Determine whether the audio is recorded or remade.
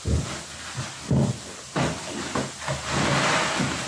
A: recorded